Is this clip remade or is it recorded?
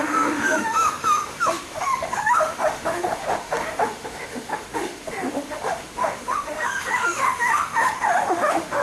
remade